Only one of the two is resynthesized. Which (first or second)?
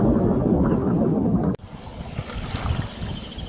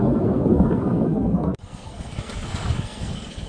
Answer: second